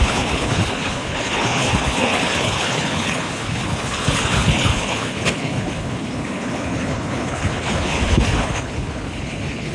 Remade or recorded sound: remade